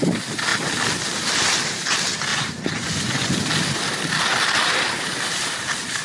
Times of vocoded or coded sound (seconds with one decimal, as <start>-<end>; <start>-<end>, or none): 2.3-3.3